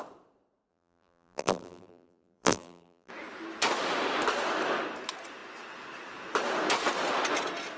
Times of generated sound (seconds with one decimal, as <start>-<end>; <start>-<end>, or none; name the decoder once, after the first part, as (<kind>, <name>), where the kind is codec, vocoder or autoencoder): 0.7-3.1 (vocoder, BigVGAN v2)